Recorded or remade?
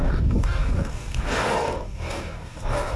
remade